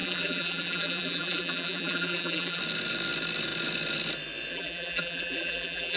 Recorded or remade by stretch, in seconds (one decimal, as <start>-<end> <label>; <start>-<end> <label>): 0.0-2.6 remade; 2.6-4.5 recorded; 4.5-6.0 remade